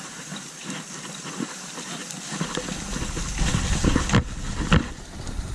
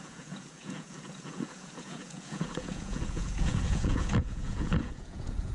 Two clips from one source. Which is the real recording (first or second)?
first